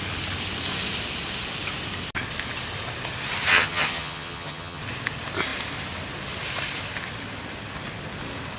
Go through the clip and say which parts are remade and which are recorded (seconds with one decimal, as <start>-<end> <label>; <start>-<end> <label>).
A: 0.0-3.5 recorded; 3.5-4.8 remade; 4.8-8.6 recorded